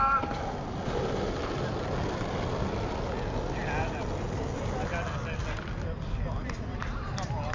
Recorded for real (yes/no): yes